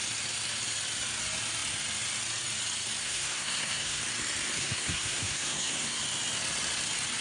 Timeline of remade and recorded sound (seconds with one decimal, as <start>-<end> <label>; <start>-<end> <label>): 0.0-3.0 recorded; 3.0-4.0 remade; 4.0-4.6 recorded; 4.6-6.0 remade; 6.0-7.2 recorded